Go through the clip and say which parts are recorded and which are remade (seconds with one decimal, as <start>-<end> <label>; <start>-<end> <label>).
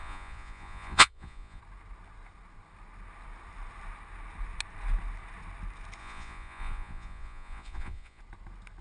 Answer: 0.0-1.6 remade; 1.6-6.0 recorded; 6.0-8.2 remade; 8.2-8.8 recorded